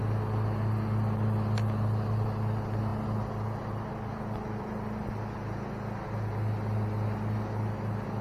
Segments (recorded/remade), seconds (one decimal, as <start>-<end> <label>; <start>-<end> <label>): 0.0-8.2 recorded